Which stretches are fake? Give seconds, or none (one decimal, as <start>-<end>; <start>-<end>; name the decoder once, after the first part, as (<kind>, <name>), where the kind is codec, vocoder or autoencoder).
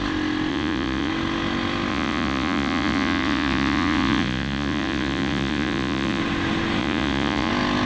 0.5-1.1 (vocoder, Vocos); 1.9-6.2; 6.8-7.5